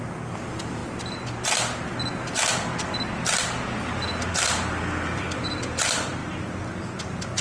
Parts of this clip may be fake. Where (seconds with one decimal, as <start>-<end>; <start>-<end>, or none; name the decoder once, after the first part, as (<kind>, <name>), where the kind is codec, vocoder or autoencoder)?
0.0-0.8 (vocoder, BigVGAN v2); 4.3-6.2; 6.7-7.4